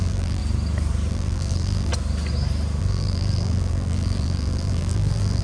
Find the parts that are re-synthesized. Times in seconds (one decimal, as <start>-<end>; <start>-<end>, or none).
0.0-0.4; 1.1-1.9; 2.8-5.4

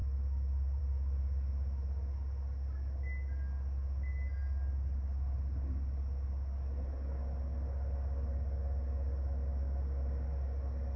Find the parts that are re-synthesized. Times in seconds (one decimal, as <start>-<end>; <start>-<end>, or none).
none

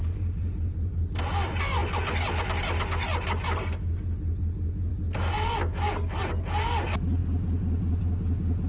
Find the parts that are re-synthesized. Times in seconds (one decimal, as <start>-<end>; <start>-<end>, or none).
0.0-1.1

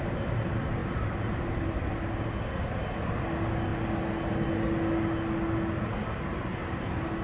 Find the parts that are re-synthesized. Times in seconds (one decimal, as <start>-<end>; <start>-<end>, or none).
0.8-1.9

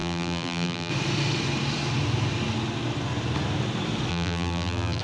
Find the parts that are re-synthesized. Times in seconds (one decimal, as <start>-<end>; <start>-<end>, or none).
0.0-0.9; 4.1-5.0

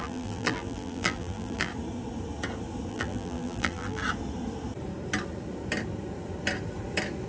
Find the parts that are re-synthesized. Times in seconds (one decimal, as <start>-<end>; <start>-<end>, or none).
0.0-1.7; 2.9-4.0